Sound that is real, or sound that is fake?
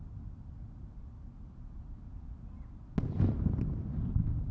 real